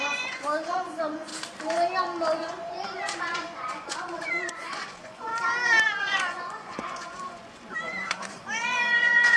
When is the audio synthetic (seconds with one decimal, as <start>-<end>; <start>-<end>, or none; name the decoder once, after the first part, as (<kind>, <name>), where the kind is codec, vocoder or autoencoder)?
0.0-1.3 (vocoder, Vocos); 2.3-5.3; 6.0-9.4